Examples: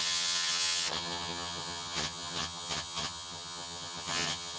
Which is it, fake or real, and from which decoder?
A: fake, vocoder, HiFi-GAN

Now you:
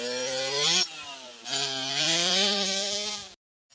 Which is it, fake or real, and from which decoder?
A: fake, vocoder, BigVGAN v2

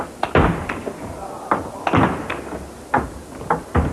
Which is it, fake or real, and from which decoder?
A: real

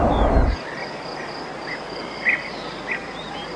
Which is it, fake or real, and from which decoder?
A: real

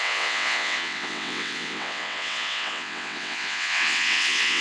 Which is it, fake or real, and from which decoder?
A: fake, vocoder, WaveNeXt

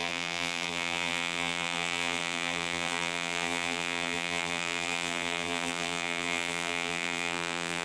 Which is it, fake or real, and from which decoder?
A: fake, vocoder, BigVGAN v2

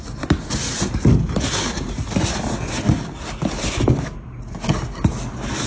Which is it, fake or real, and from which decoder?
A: real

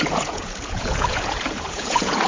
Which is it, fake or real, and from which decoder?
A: fake, vocoder, Vocos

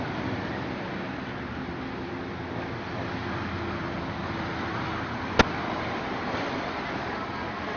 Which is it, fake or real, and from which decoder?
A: real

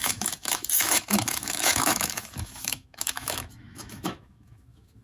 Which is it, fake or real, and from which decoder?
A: fake, autoencoder, DAC-VAE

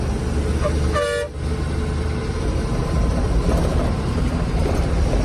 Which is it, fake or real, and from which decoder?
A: real